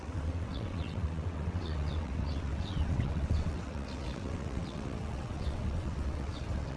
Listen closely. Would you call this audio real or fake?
fake